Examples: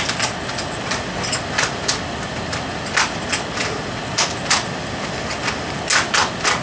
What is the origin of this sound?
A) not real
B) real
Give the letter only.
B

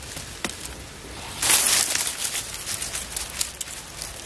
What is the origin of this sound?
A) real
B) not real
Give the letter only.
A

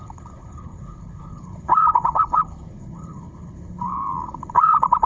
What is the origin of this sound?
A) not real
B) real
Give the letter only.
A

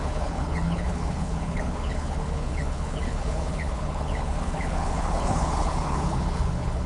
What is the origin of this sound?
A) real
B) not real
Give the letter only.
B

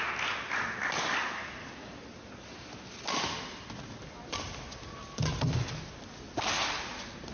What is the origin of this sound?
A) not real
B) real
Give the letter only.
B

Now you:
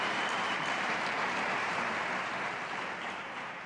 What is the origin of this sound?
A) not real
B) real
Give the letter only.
A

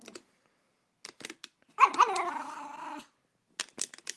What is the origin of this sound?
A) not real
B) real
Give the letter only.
B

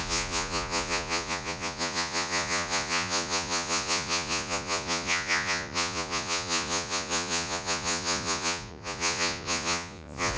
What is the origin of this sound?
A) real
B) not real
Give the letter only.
B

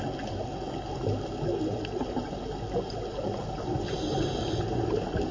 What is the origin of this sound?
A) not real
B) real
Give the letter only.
B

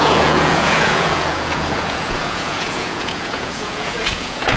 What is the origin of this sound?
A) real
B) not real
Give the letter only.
B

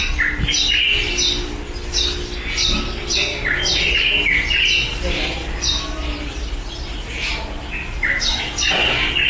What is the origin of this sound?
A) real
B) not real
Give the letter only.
A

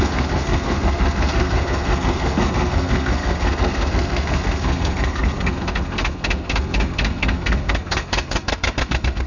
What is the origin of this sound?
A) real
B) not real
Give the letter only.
B